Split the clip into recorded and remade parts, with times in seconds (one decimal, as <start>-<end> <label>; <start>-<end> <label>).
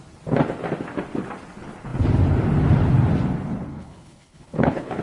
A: 0.0-3.7 recorded; 3.7-5.0 remade